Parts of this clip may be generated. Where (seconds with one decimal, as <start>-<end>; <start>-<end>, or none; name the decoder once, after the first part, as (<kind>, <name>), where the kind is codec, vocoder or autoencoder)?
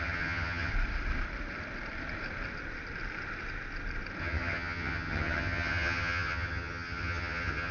0.0-0.7 (vocoder, HiFi-GAN); 4.2-7.7